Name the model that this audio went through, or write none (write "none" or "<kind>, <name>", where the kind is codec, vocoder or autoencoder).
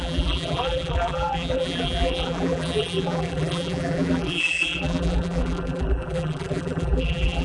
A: vocoder, BigVGAN v2